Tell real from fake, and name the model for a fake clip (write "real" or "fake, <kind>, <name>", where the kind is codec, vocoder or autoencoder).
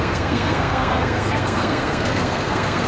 fake, codec, SNAC